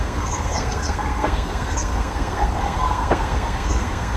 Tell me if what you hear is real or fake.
fake